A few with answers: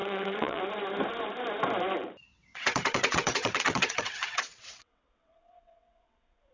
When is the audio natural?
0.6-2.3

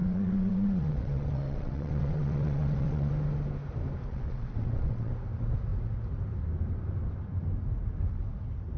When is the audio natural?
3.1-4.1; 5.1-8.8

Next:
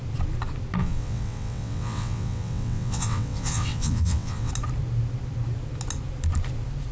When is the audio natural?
0.0-0.8; 4.5-6.9